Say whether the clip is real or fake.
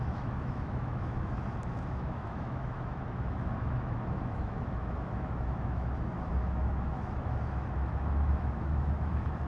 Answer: fake